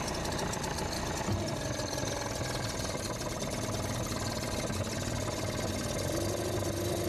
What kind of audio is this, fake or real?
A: real